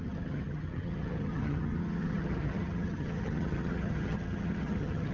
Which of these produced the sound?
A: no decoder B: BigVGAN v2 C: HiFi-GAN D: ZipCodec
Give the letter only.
C